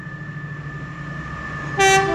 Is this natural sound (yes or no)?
yes